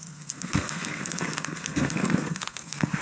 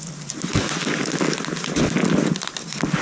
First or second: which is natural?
second